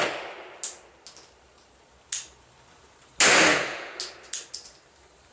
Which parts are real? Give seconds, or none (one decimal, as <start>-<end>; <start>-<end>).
0.0-3.5; 4.0-5.3